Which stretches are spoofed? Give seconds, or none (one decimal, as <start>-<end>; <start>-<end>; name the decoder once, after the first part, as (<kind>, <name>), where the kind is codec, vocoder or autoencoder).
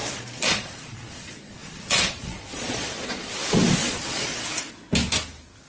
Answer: 0.0-3.3 (vocoder, Vocos); 3.8-4.4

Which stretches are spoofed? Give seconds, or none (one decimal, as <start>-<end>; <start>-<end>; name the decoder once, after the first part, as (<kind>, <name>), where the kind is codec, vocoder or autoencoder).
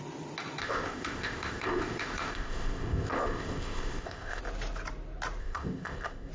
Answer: 0.6-4.4 (codec, ZipCodec); 5.4-6.3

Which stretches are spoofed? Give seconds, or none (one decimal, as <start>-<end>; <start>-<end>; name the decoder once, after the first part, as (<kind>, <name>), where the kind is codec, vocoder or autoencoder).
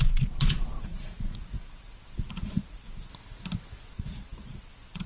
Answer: 0.0-3.1 (vocoder, Vocos); 3.9-5.1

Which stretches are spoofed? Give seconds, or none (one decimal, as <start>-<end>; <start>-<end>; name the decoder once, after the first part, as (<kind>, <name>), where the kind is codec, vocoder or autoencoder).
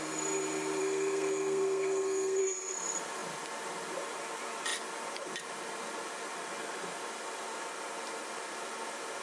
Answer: 0.8-2.4 (codec, SNAC)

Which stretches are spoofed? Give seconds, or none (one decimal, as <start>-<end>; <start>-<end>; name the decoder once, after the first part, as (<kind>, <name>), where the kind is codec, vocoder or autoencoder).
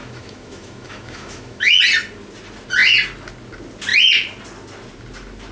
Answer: 0.0-1.8 (autoencoder, DAC-VAE)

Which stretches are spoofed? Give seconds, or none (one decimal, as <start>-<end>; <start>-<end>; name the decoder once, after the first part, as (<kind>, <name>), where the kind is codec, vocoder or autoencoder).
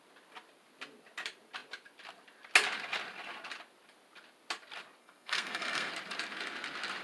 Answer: 5.0-5.9 (codec, SNAC)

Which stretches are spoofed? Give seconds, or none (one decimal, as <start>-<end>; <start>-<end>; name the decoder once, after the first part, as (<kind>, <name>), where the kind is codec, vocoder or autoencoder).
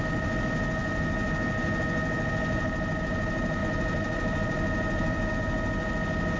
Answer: 3.6-5.3 (vocoder, BigVGAN v2)